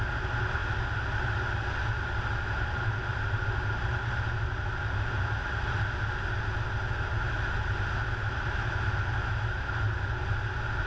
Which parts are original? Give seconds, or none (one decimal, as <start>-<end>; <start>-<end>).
0.0-10.9